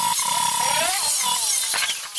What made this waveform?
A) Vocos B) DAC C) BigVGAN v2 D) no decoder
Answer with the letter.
D